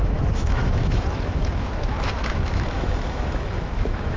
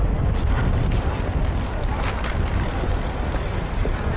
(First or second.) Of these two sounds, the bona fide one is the second